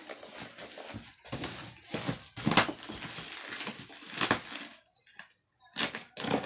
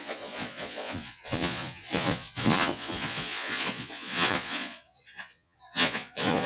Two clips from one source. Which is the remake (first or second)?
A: second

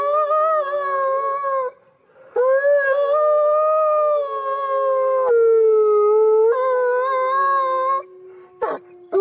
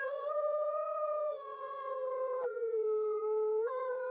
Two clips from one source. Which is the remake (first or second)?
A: second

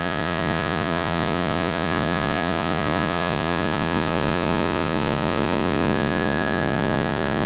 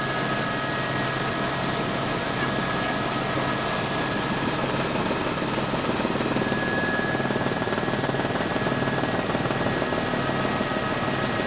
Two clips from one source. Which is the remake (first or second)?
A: first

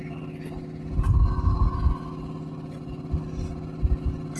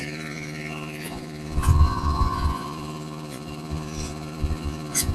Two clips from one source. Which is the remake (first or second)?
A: second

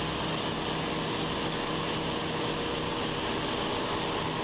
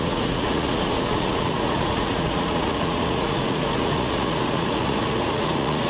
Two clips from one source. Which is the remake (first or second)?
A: second